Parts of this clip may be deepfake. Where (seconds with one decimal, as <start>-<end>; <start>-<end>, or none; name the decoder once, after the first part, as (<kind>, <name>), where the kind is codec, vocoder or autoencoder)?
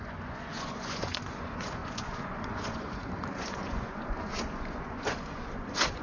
0.0-6.0 (vocoder, Vocos)